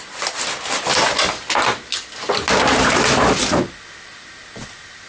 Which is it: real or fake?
real